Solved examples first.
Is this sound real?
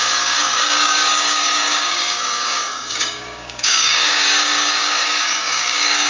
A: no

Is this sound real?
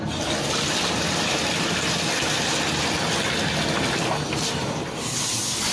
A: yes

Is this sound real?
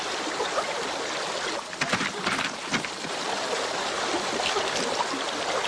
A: yes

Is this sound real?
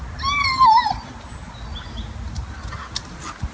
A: yes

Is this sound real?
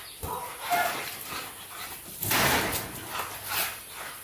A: yes